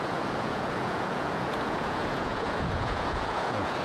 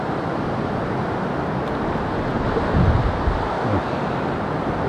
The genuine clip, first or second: second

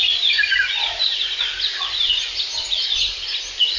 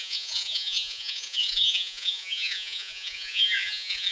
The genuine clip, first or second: first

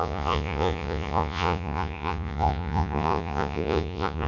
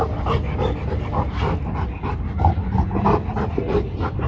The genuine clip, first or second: second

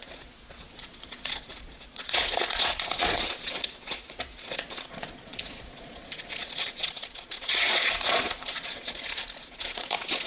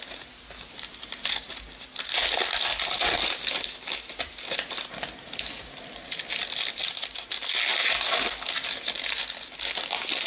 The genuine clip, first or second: second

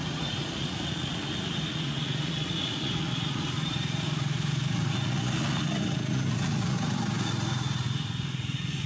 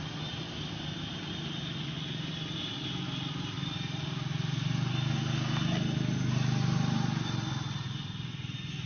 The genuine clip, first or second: second